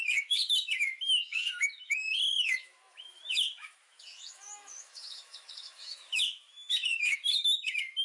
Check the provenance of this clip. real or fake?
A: fake